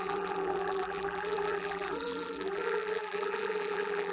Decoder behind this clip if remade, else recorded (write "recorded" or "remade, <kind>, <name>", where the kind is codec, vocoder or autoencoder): remade, vocoder, BigVGAN v2